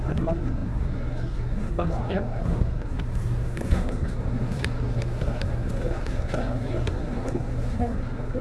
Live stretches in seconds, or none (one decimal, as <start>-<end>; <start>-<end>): none